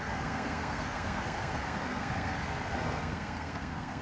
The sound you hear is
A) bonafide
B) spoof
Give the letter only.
B